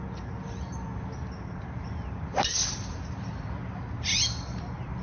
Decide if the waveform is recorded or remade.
recorded